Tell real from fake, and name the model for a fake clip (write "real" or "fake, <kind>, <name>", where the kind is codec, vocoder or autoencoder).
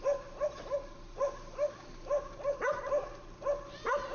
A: fake, vocoder, BigVGAN v2